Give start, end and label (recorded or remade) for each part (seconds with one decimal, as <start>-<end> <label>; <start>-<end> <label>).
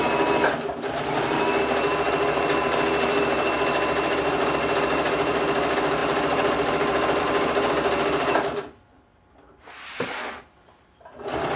0.0-11.6 recorded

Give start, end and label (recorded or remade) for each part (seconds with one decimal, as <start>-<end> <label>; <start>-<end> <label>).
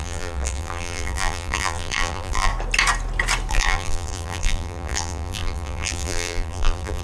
0.0-2.5 remade; 2.5-3.5 recorded; 3.5-7.0 remade